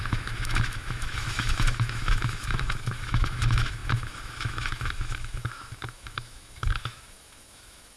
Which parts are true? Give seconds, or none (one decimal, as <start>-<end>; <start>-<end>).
none